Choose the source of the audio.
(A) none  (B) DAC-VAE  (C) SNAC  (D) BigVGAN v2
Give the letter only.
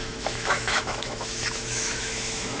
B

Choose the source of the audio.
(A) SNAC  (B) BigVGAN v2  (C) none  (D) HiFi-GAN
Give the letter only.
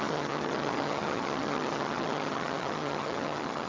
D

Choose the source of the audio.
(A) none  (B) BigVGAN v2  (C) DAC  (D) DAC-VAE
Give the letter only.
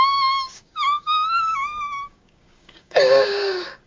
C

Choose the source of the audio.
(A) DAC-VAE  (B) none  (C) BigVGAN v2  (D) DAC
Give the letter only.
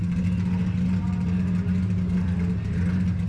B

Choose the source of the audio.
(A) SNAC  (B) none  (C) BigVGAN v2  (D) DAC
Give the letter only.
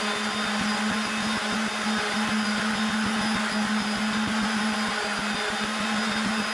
B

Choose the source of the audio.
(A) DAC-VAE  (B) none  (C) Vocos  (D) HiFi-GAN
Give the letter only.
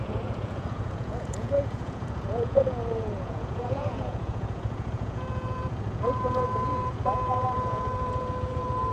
C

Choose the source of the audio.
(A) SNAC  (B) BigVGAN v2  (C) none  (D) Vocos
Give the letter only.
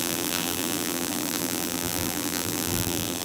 B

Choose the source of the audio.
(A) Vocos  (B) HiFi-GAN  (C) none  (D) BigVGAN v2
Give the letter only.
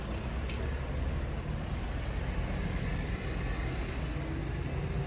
C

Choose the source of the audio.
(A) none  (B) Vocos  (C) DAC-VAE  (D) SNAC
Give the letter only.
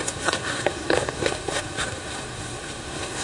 D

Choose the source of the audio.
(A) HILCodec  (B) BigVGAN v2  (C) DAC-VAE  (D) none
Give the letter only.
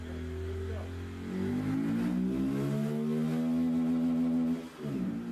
D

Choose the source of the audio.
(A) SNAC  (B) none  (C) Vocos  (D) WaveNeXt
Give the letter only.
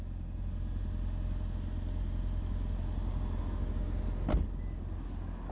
B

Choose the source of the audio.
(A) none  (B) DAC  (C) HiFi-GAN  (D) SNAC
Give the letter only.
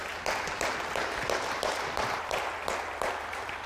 A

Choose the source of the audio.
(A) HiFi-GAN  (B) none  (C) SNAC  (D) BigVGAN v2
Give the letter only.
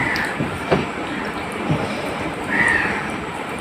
D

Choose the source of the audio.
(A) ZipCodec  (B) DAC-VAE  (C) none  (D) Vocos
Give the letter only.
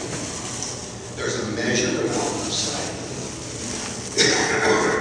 C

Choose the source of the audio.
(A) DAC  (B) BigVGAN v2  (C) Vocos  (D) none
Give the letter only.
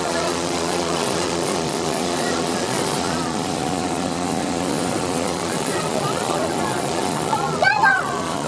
C